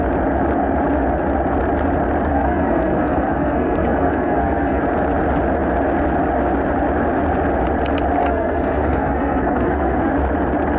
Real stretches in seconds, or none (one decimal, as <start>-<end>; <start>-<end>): 0.0-2.3; 4.8-8.2; 10.1-10.8